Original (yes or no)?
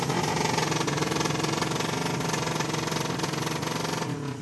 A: yes